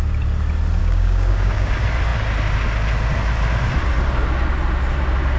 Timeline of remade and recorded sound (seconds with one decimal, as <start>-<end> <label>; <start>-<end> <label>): 0.0-0.8 recorded; 0.8-1.7 remade; 1.7-5.4 recorded

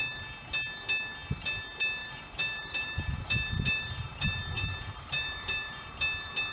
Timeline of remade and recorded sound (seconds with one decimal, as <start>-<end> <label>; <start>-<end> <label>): 0.0-2.0 recorded; 2.0-5.9 remade; 5.9-6.5 recorded

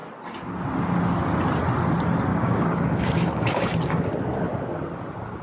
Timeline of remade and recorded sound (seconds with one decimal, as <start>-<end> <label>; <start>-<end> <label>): 0.0-2.3 recorded; 2.3-4.1 remade; 4.1-5.4 recorded

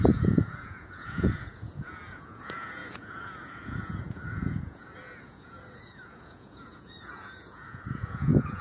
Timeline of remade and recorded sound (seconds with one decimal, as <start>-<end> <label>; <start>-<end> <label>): 0.0-8.6 remade

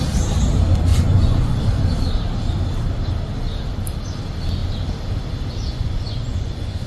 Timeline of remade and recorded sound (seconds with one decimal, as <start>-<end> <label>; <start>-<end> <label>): 0.0-0.9 recorded; 0.9-1.6 remade; 1.6-5.7 recorded; 5.7-6.9 remade